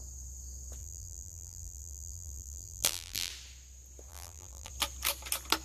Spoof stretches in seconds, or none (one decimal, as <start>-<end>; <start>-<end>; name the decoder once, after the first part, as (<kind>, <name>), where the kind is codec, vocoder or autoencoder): 0.8-3.3 (vocoder, BigVGAN v2); 4.1-4.7